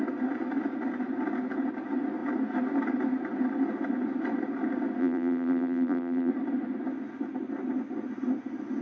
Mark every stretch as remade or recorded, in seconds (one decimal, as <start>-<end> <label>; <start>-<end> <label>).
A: 0.0-5.0 recorded; 5.0-6.3 remade; 6.3-8.8 recorded